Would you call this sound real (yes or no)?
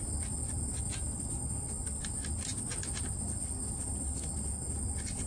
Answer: yes